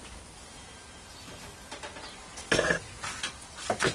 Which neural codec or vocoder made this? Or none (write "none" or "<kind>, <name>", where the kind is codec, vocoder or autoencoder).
none